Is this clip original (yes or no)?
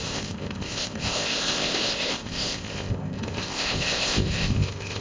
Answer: no